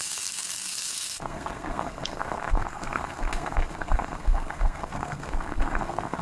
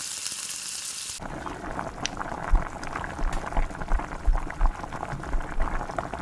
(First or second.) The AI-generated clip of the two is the first